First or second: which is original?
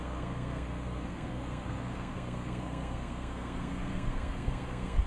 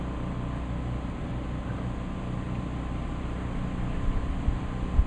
second